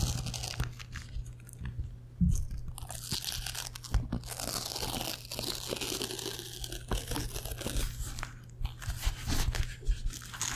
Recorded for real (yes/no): yes